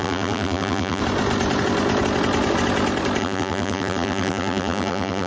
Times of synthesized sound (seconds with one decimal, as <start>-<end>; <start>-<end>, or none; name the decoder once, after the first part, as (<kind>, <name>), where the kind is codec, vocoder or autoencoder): 0.0-1.0 (vocoder, BigVGAN v2); 3.2-5.3